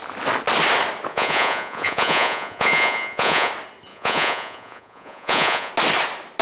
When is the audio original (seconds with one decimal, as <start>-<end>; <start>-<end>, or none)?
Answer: 0.0-1.1; 3.5-3.9; 5.7-6.4